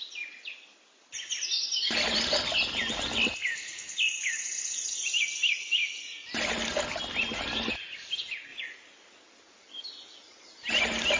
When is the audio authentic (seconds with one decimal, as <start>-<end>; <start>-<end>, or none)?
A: 0.0-1.7; 4.3-11.2